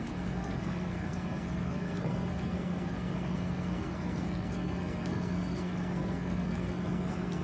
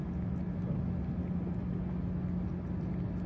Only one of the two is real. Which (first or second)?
second